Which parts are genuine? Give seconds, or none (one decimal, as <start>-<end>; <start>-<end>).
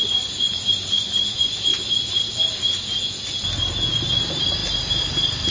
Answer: 0.0-4.6